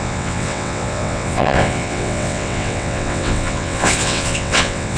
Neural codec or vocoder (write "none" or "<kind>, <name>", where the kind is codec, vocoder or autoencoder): vocoder, WaveNeXt